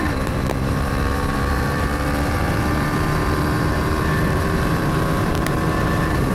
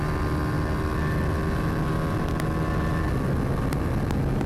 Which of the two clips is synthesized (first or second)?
first